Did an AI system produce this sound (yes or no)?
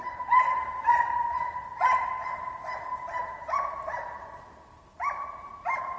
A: yes